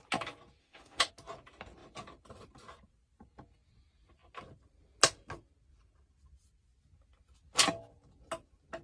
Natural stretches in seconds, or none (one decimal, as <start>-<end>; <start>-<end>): 0.0-0.6; 1.1-8.8